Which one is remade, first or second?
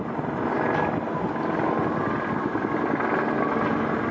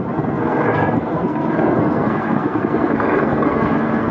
second